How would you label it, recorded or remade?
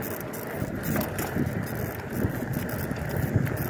recorded